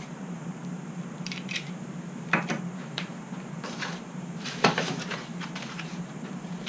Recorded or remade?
remade